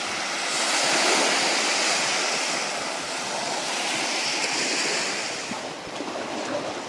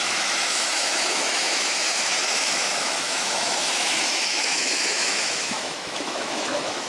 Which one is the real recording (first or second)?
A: first